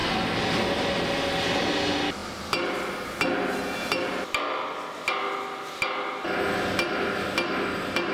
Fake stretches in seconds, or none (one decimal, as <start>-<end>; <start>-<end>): none